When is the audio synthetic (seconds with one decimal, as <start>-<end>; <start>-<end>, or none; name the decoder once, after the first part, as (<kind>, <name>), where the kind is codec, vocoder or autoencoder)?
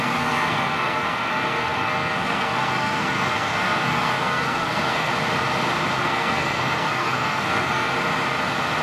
0.0-5.1 (codec, SNAC); 6.0-7.9